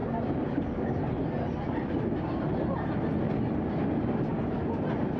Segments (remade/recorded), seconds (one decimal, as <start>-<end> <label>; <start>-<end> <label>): 0.0-5.2 recorded

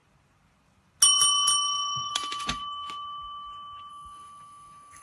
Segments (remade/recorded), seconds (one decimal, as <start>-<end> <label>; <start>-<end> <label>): 0.0-2.1 recorded; 2.1-2.6 remade; 2.6-3.9 recorded; 3.9-5.0 remade

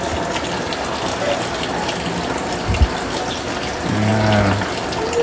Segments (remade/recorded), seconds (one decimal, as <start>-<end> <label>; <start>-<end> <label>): 0.0-5.2 recorded

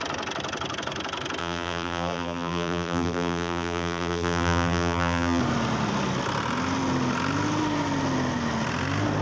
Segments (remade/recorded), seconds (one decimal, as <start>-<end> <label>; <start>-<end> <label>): 0.0-1.4 recorded; 1.4-5.4 remade; 5.4-9.2 recorded

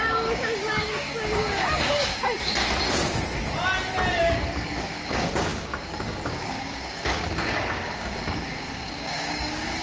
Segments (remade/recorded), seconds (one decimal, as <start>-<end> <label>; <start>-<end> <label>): 0.0-2.1 remade; 2.1-4.2 recorded; 4.2-9.8 remade

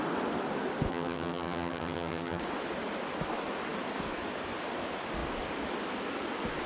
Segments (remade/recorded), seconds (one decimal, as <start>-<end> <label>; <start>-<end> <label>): 0.0-0.9 recorded; 0.9-2.4 remade; 2.4-6.7 recorded